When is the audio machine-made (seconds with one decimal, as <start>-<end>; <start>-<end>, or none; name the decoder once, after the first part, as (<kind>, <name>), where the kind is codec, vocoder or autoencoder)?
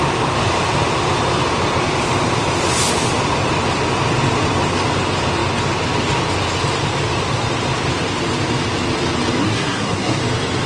9.4-10.2 (codec, SNAC)